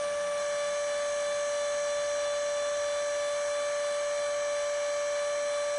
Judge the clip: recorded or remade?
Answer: recorded